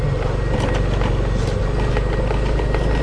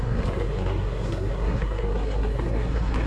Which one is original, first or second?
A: first